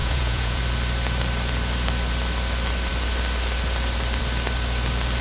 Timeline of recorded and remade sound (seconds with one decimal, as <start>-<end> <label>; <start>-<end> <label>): 0.0-0.6 remade; 0.6-5.2 recorded